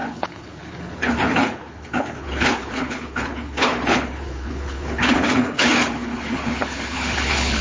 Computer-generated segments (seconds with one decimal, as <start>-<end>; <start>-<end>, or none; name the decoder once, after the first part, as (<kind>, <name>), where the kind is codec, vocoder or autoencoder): 0.0-7.6 (codec, HILCodec)